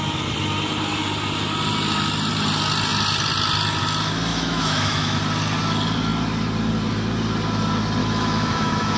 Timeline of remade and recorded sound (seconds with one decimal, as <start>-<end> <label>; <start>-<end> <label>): 0.0-4.3 recorded; 4.3-5.2 remade; 5.2-8.0 recorded; 8.0-9.0 remade